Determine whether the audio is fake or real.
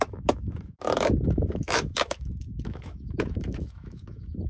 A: fake